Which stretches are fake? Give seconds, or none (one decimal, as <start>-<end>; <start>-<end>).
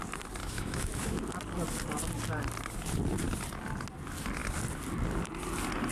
0.4-1.2